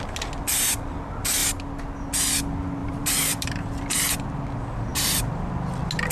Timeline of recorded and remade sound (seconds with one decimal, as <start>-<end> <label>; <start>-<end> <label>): 0.0-2.8 recorded; 2.8-3.8 remade; 3.8-4.9 recorded; 4.9-5.5 remade; 5.5-6.1 recorded